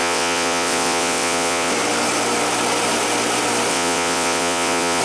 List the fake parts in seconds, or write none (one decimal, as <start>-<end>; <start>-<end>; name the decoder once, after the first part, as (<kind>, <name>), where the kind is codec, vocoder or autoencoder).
0.0-1.7 (vocoder, WaveNeXt); 3.7-5.0